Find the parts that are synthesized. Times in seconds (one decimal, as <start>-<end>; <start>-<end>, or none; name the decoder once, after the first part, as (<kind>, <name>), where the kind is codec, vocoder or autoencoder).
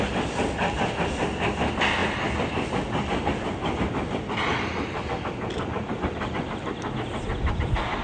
none